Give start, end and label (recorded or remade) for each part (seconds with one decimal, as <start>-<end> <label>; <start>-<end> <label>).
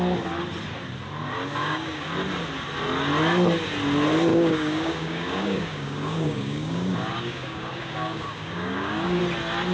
0.0-1.6 recorded; 1.6-2.1 remade; 2.1-4.3 recorded; 4.3-9.2 remade; 9.2-9.7 recorded